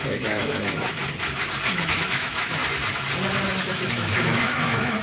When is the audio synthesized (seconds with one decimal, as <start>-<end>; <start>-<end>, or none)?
0.0-1.0; 1.7-2.6; 3.6-5.0